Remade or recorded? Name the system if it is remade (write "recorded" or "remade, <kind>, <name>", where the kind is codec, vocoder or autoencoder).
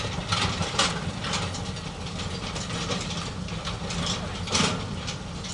recorded